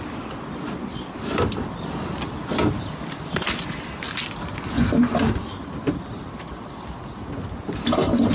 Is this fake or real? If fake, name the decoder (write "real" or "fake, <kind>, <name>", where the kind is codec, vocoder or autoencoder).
real